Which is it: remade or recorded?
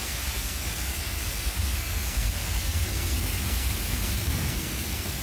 remade